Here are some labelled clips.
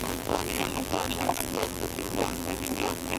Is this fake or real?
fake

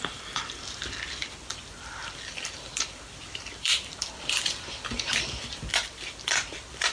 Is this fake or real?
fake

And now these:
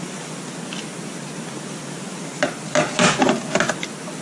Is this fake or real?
real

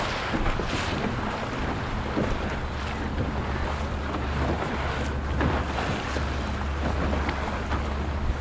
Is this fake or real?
real